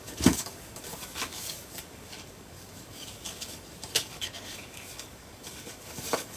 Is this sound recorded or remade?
remade